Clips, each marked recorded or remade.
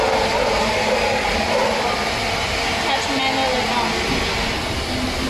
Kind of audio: recorded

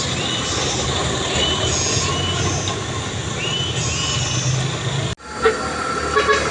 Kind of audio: recorded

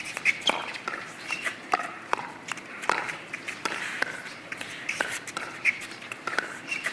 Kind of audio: remade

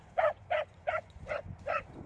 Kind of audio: remade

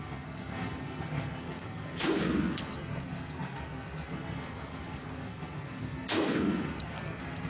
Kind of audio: remade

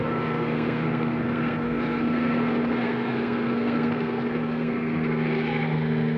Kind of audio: remade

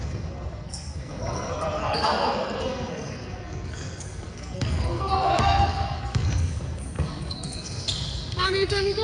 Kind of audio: remade